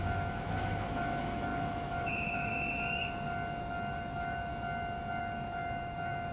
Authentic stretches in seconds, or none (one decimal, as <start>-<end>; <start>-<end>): 3.0-3.6; 4.5-5.2

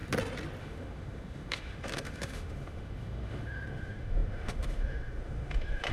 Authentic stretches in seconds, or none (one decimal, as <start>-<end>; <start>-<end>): 0.0-0.6

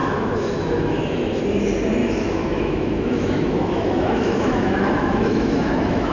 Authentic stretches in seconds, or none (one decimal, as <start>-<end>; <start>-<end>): 1.4-2.0

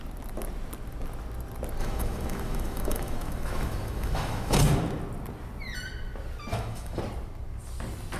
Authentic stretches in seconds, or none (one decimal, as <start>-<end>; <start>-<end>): 0.0-1.8; 4.6-6.5; 7.0-8.2